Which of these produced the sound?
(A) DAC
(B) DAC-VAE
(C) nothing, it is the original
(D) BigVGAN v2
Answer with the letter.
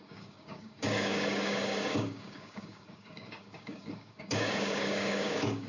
A